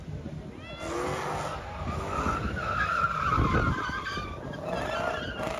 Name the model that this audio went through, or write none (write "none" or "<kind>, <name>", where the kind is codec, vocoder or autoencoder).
none